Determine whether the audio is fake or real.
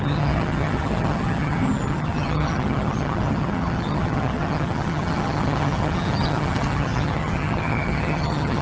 fake